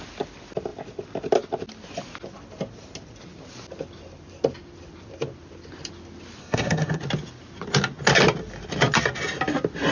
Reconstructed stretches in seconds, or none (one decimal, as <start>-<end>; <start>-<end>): 6.4-7.0